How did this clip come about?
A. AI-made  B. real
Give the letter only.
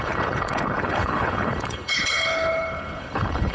A